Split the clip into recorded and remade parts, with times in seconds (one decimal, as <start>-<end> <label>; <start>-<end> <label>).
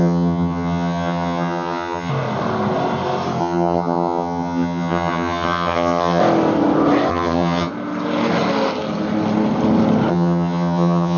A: 0.0-2.1 remade; 2.1-3.4 recorded; 3.4-6.2 remade; 6.2-7.1 recorded; 7.1-7.7 remade; 7.7-10.1 recorded; 10.1-11.2 remade